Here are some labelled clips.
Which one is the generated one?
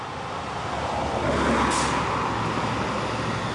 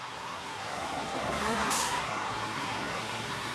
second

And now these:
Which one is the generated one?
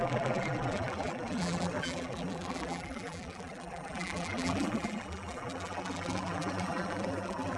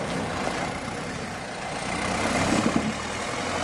first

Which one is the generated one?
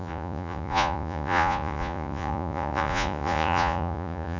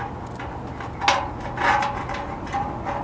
first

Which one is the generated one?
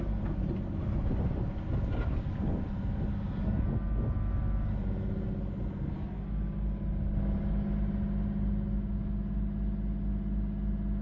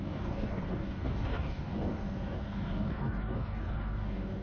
second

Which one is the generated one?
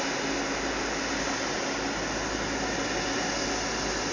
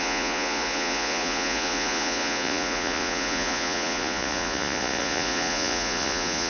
second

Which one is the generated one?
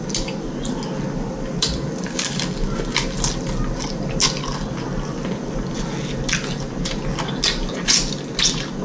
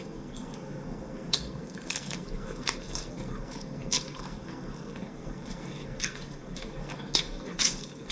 second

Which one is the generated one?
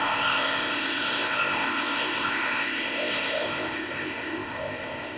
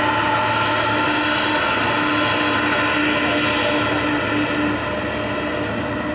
first